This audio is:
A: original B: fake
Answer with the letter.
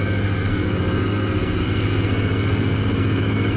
B